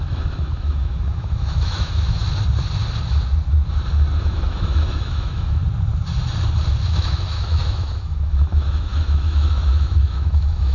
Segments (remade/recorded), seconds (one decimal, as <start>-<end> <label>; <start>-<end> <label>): 0.0-2.2 remade; 2.2-4.2 recorded; 4.2-5.6 remade; 5.6-6.9 recorded; 6.9-10.7 remade